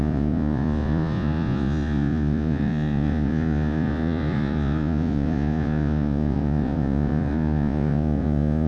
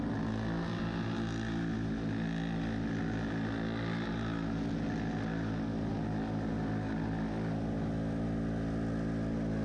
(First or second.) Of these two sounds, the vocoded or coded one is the first